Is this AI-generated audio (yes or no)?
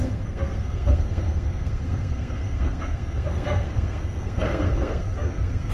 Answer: yes